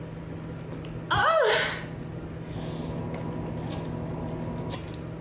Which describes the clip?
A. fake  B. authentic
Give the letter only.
B